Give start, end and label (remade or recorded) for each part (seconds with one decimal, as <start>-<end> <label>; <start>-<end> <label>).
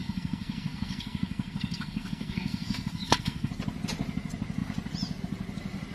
0.0-3.5 remade; 3.5-5.9 recorded